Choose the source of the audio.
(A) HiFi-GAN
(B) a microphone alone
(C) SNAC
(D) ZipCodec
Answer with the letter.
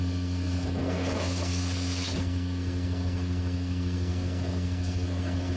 C